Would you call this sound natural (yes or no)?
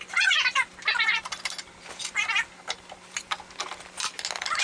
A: yes